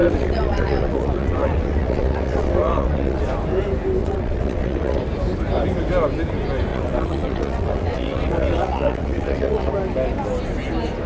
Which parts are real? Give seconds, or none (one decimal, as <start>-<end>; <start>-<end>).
3.2-4.0; 5.0-6.7; 9.7-11.1